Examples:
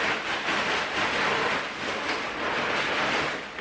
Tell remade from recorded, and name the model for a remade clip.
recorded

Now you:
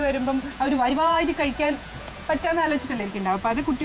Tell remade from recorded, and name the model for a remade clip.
remade, vocoder, Vocos